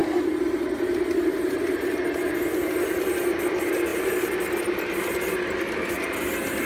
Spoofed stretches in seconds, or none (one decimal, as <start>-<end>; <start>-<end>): none